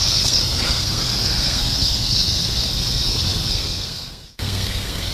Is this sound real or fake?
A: fake